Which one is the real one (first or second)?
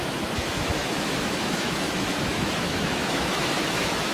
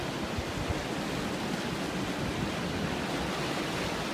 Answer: second